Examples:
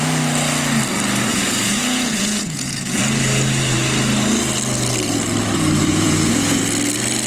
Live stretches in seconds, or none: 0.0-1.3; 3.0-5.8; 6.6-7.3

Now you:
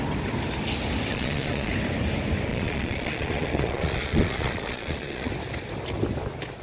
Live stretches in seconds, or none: 0.0-1.1; 1.7-2.5; 5.3-6.6